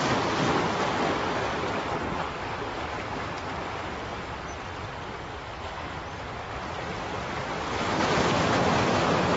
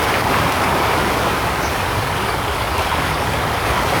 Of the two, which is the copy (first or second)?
second